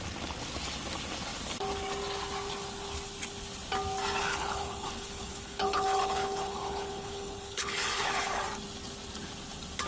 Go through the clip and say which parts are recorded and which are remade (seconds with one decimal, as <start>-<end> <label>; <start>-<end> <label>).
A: 0.0-4.2 recorded; 4.2-8.4 remade; 8.4-9.9 recorded